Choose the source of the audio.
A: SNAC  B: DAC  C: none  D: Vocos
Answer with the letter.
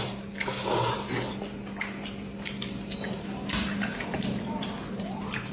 C